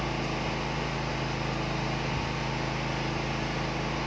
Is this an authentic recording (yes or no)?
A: yes